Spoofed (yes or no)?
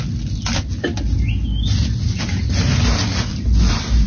no